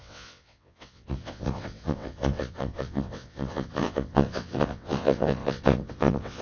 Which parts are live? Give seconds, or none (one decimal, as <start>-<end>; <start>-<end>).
none